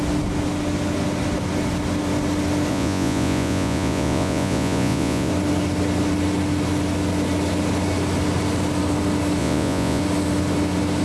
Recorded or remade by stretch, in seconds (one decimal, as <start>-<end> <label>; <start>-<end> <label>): 0.0-2.7 recorded; 2.7-5.3 remade; 5.3-9.4 recorded; 9.4-10.0 remade; 10.0-11.0 recorded